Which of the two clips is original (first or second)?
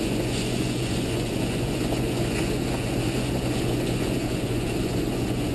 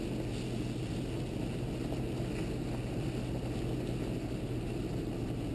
second